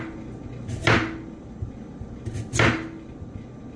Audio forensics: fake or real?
real